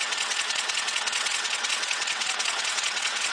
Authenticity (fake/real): fake